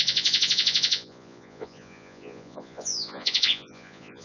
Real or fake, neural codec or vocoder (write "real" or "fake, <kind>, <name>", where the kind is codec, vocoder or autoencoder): fake, vocoder, Vocos